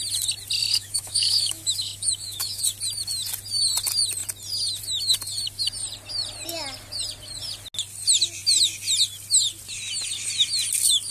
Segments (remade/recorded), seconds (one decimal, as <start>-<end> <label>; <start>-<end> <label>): 0.0-0.6 recorded; 0.6-2.6 remade; 2.6-11.1 recorded